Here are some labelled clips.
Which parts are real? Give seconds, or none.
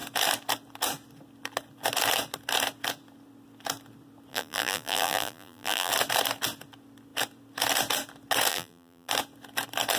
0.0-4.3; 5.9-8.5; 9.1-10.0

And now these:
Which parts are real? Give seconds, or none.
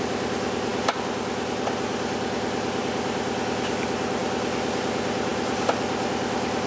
0.0-6.7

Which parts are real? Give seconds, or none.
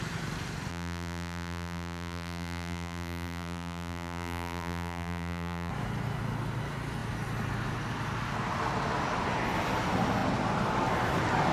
0.0-0.7; 5.7-11.5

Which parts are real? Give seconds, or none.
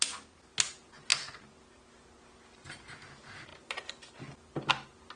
0.0-3.5; 4.1-5.2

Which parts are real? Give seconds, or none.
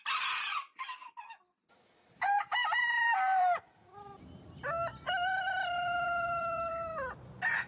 0.0-2.6; 7.1-7.7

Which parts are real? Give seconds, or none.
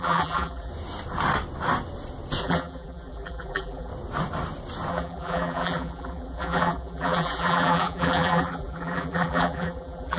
0.7-2.4; 3.9-4.9